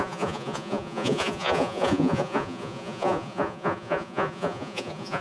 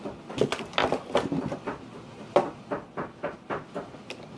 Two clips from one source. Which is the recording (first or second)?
second